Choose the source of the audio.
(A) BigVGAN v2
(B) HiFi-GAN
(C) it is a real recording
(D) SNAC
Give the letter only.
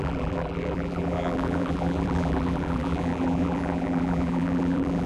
A